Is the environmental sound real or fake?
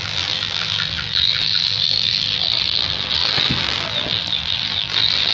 fake